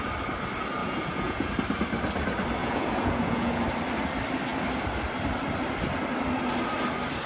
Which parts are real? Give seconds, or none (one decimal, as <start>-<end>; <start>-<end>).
0.0-0.8; 1.5-2.6; 3.6-7.3